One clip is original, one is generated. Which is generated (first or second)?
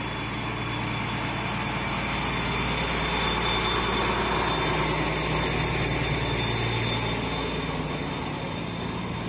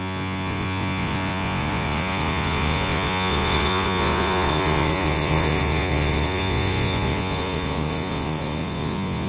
second